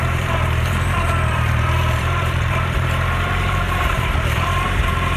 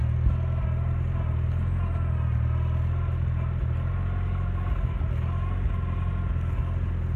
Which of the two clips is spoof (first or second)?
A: first